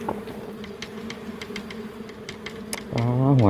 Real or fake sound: real